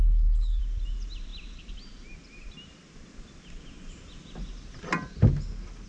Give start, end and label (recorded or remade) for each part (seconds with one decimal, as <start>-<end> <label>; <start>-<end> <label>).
0.0-0.6 remade; 0.6-5.9 recorded